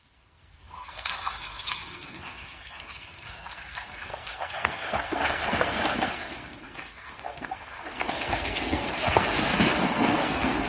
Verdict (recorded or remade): remade